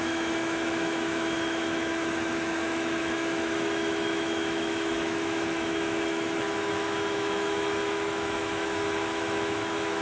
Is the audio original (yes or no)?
no